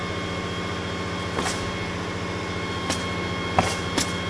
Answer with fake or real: real